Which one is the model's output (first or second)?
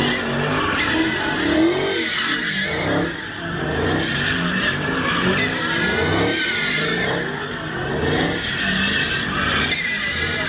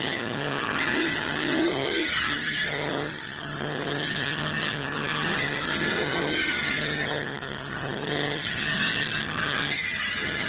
second